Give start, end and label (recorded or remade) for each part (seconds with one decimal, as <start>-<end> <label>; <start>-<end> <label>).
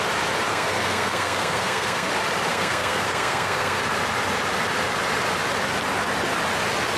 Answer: 0.0-0.5 recorded; 0.5-2.1 remade; 2.1-2.5 recorded; 2.5-3.8 remade; 3.8-7.0 recorded